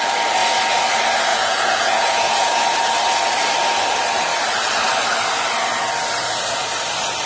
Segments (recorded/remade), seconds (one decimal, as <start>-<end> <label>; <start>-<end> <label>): 0.0-1.3 recorded; 1.3-2.7 remade; 2.7-7.3 recorded